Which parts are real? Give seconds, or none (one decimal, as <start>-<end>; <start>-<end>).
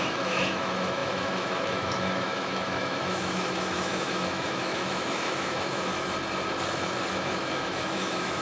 5.9-7.1